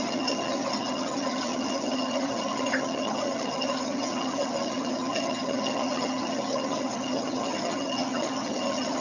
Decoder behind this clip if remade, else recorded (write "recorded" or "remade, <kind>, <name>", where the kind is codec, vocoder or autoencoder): remade, vocoder, HiFi-GAN